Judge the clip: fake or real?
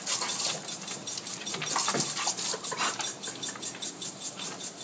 real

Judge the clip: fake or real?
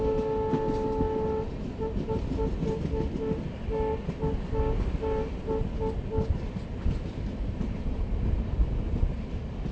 real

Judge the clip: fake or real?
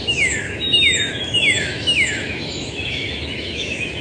fake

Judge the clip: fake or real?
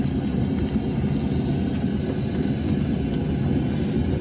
real